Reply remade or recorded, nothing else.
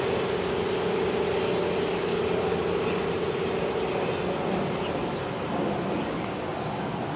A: recorded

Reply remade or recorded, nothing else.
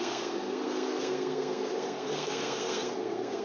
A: remade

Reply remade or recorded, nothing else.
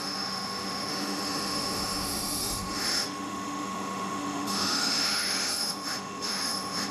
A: remade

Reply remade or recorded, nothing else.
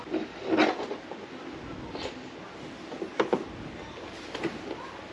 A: recorded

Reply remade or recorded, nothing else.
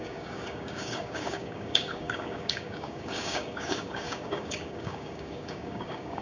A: remade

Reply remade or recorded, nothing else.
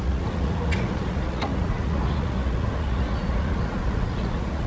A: remade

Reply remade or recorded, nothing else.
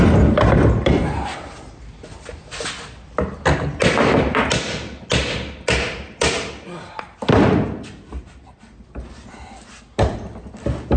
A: recorded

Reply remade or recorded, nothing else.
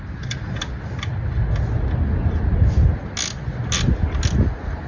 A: recorded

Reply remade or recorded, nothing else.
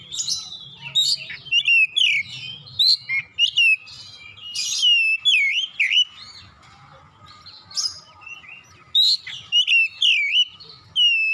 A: recorded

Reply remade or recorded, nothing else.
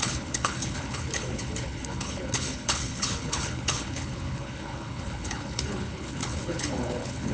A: remade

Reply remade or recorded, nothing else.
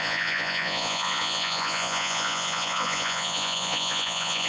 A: remade